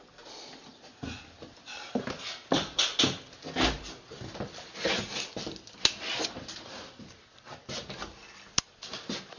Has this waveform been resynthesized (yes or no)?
no